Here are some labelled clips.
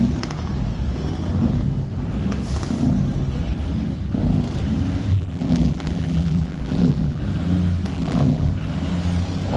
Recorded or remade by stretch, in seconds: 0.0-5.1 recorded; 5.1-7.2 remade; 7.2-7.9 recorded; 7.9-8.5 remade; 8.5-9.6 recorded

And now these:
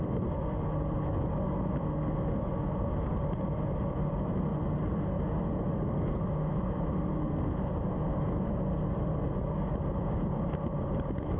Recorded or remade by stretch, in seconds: 0.0-11.4 recorded